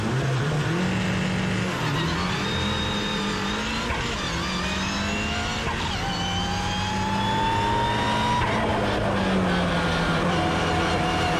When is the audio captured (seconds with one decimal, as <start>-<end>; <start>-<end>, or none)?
0.0-11.4